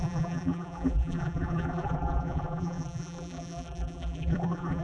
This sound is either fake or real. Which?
fake